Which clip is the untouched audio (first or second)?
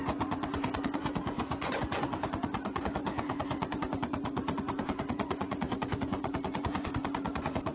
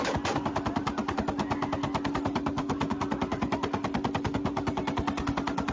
second